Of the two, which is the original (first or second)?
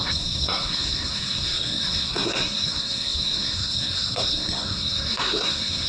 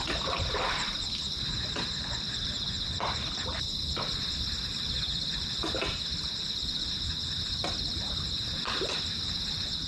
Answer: second